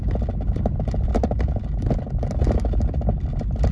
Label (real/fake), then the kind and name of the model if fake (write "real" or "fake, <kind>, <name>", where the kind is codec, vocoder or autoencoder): real